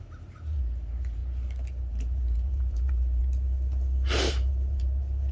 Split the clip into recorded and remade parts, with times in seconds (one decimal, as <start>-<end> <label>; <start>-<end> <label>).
0.0-1.2 remade; 1.2-1.9 recorded; 1.9-3.2 remade; 3.2-4.3 recorded; 4.3-5.3 remade